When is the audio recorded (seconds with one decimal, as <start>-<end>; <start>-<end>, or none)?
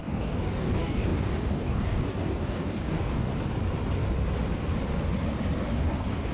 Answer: 3.3-5.7